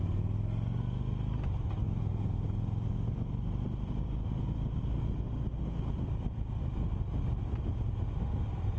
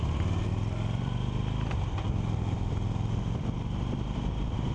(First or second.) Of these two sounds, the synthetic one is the second